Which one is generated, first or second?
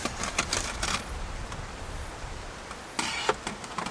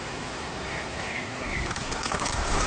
second